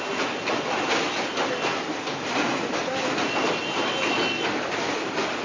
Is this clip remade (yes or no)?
no